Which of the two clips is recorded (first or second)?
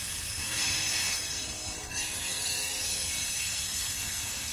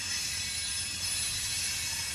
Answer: second